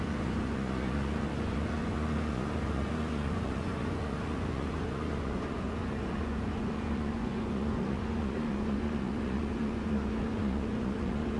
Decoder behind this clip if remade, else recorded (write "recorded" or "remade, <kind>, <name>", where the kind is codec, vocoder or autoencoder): remade, vocoder, Vocos